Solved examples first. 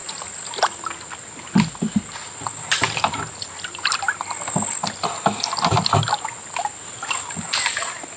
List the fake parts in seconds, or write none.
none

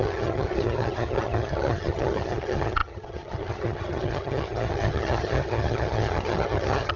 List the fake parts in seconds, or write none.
0.0-7.0 (vocoder, HiFi-GAN)